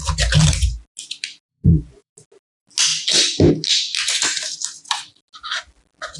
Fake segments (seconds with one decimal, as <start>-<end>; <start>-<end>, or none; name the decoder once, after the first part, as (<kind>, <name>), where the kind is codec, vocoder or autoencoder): 1.5-2.1 (vocoder, Vocos)